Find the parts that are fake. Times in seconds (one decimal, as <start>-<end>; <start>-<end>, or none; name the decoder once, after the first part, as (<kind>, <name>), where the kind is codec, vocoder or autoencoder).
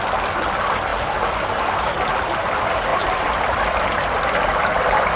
2.9-3.4 (vocoder, BigVGAN v2)